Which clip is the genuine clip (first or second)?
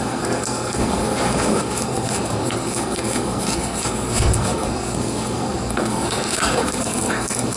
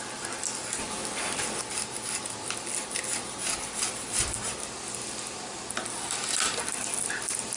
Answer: second